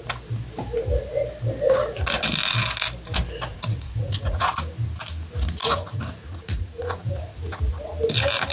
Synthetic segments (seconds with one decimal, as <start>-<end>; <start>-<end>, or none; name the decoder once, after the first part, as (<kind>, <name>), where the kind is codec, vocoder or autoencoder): 3.5-4.5 (vocoder, Vocos); 5.6-7.6